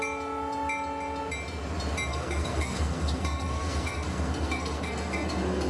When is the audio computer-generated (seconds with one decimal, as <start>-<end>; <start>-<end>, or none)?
2.1-5.7